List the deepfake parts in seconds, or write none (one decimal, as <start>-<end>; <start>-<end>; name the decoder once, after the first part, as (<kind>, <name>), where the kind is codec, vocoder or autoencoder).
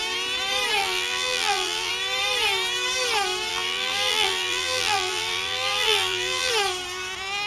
0.8-1.9 (vocoder, BigVGAN v2); 3.5-6.5